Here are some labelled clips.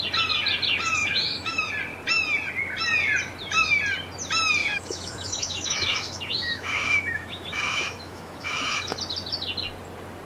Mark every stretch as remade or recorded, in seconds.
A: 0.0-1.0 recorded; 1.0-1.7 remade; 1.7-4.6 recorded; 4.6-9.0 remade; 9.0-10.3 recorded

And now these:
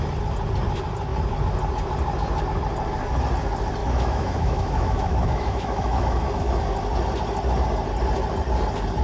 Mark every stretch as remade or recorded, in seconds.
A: 0.0-3.8 recorded; 3.8-6.5 remade; 6.5-9.0 recorded

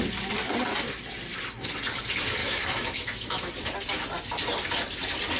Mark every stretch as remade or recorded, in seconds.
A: 0.0-2.4 recorded; 2.4-3.5 remade; 3.5-5.4 recorded

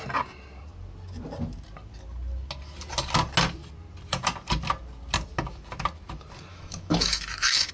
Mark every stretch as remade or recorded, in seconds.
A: 0.0-6.5 recorded; 6.5-7.7 remade

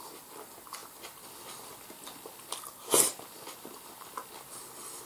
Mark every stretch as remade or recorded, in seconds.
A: 0.0-5.1 recorded

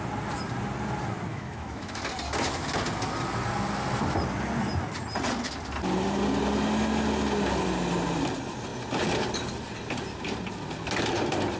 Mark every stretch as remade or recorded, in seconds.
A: 0.0-1.3 recorded; 1.3-2.0 remade; 2.0-11.6 recorded

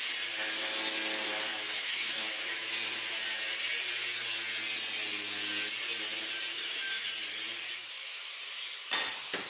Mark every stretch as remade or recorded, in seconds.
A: 0.0-1.5 recorded; 1.5-2.7 remade; 2.7-6.5 recorded; 6.5-7.1 remade; 7.1-7.8 recorded; 7.8-8.4 remade; 8.4-9.5 recorded

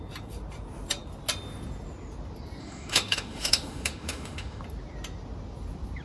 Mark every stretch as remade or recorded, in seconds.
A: 0.0-2.6 recorded; 2.6-4.6 remade; 4.6-6.0 recorded